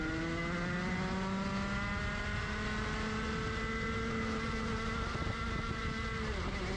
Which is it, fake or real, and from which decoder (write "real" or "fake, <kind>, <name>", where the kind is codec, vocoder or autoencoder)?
real